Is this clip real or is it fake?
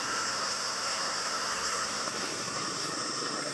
fake